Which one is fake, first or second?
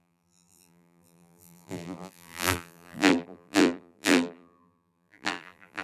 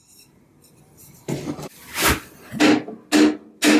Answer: first